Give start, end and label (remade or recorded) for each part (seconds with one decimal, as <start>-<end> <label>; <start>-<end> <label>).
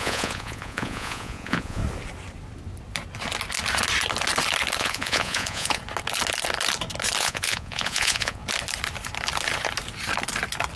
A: 0.0-1.8 remade; 1.8-4.8 recorded; 4.8-5.8 remade; 5.8-7.2 recorded; 7.2-8.4 remade; 8.4-10.8 recorded